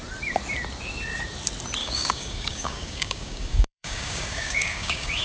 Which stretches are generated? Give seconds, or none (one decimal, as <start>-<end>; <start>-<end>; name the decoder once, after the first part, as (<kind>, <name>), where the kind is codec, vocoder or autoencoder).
1.8-5.2 (codec, DAC)